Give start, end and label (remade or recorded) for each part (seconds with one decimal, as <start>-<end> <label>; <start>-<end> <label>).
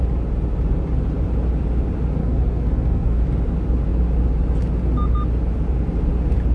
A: 0.0-2.2 recorded; 2.2-3.2 remade; 3.2-6.5 recorded